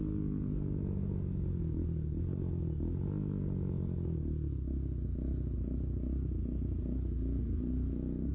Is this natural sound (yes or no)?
yes